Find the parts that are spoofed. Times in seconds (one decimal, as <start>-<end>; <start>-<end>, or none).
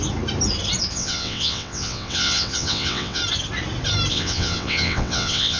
0.9-3.2; 4.1-5.6